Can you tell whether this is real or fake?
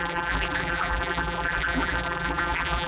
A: fake